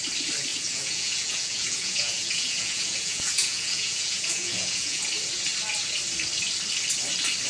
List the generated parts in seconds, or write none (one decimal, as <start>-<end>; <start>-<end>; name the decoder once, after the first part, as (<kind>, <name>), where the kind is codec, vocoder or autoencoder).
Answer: 0.5-5.0 (vocoder, Vocos)